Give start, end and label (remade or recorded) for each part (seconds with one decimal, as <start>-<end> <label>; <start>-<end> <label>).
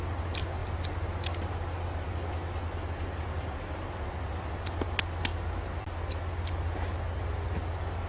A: 0.0-8.1 recorded